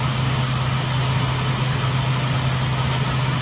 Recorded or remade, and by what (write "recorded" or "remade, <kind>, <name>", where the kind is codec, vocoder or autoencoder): recorded